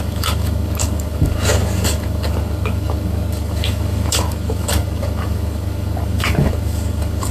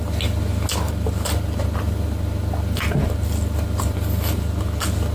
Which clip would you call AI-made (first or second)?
first